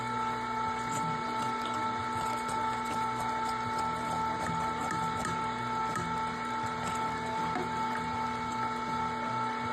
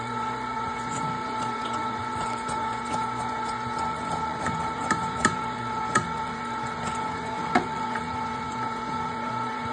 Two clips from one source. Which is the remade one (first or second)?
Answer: second